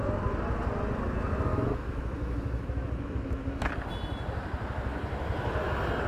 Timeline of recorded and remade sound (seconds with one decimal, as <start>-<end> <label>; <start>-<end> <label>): 0.0-1.5 recorded; 1.5-3.7 remade; 3.7-6.1 recorded